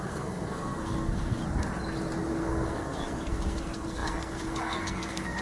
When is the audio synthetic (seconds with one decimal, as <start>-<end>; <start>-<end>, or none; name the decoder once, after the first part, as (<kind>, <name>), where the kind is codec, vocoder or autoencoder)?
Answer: 0.0-1.4 (codec, SNAC); 2.3-5.4